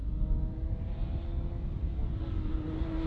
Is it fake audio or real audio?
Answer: real